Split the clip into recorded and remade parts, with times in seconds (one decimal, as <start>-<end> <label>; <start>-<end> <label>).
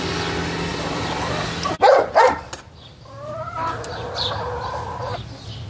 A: 0.0-0.7 recorded; 0.7-4.1 remade; 4.1-5.7 recorded